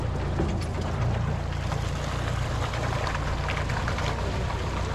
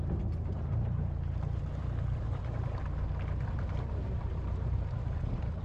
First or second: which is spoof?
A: second